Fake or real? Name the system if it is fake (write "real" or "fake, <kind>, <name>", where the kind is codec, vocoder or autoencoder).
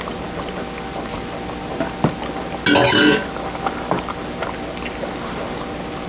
real